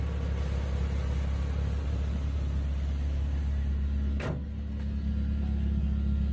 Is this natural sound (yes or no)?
yes